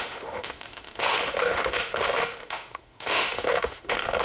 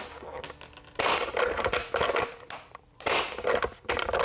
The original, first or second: second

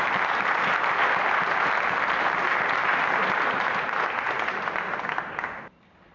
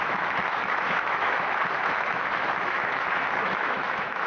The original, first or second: first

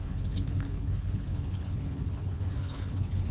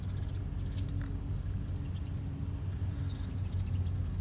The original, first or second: second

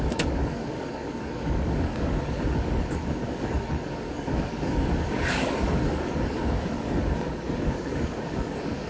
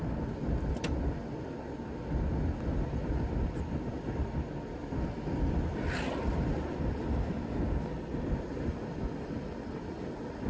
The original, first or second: second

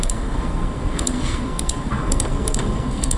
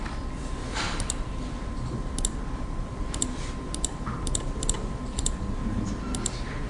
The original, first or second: second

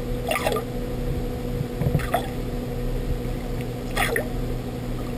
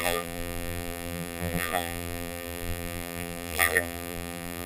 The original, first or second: first